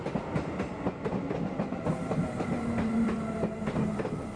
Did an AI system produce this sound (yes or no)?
yes